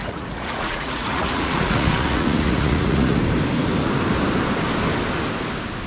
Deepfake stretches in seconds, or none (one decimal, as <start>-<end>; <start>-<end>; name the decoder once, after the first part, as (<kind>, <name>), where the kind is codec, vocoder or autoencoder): 0.0-3.2 (vocoder, Vocos)